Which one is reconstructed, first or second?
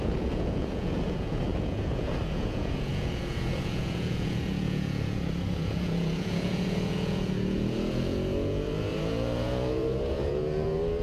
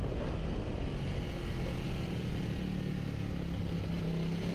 first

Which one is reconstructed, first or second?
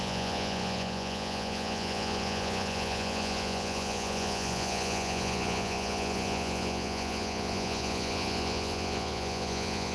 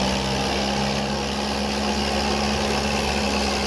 first